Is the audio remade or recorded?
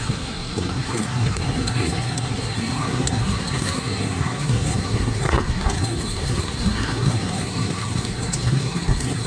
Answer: remade